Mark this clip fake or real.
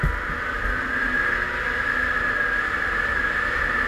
real